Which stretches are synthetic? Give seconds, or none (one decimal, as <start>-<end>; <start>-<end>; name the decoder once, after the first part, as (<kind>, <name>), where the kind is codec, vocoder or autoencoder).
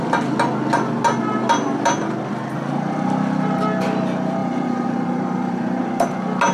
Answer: 4.4-5.8 (vocoder, BigVGAN v2)